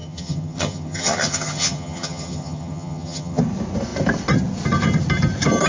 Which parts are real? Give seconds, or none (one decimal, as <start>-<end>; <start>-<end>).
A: 3.4-5.7